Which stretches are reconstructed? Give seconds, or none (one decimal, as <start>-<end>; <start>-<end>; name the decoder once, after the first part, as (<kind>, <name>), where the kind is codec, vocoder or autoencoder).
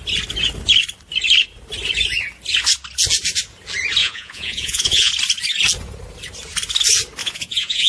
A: 4.0-5.1 (vocoder, Vocos); 7.2-7.9